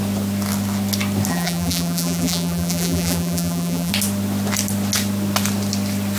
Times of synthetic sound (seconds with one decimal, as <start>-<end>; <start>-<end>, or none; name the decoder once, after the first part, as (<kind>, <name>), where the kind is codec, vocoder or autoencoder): 1.3-3.9 (vocoder, BigVGAN v2)